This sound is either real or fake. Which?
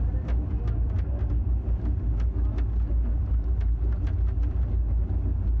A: real